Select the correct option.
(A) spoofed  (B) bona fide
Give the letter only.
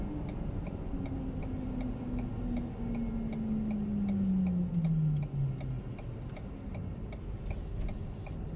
B